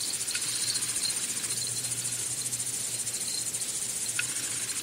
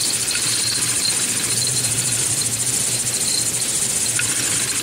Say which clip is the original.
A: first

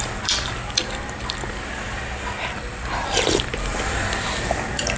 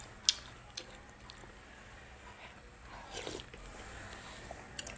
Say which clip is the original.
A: second